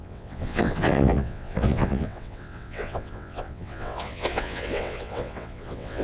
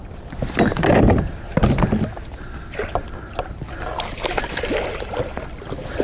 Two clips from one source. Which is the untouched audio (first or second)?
second